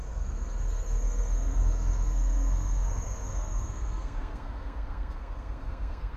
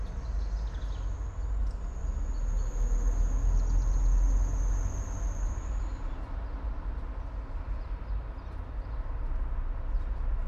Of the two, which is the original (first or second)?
second